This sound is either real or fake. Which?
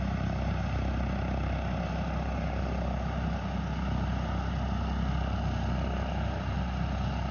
real